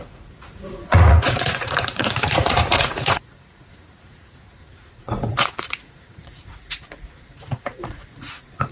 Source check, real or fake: fake